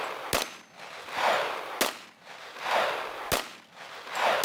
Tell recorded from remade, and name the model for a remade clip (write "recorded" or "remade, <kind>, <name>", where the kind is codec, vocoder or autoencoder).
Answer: recorded